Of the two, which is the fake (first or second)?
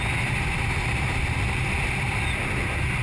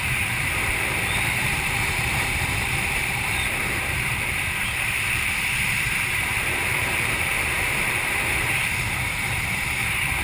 second